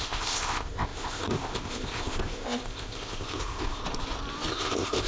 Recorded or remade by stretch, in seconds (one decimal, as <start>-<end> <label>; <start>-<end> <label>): 0.0-3.8 remade; 3.8-4.5 recorded; 4.5-5.1 remade